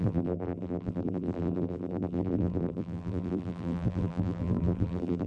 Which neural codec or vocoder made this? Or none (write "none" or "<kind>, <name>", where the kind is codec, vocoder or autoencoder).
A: vocoder, BigVGAN v2